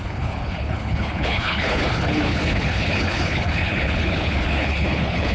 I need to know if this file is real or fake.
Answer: fake